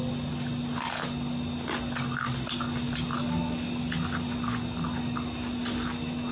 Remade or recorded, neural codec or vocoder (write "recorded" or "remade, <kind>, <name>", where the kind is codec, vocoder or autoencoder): recorded